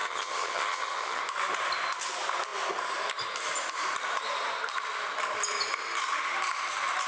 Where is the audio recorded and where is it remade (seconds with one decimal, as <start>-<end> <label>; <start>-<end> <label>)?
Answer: 0.0-1.2 remade; 1.2-7.1 recorded